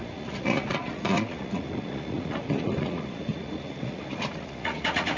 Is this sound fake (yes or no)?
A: yes